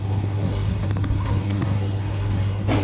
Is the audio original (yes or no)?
no